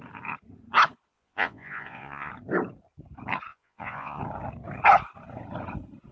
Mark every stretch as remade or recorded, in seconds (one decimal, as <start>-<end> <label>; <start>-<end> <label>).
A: 0.0-1.1 recorded; 1.1-2.3 remade; 2.3-3.5 recorded; 3.5-4.2 remade; 4.2-6.1 recorded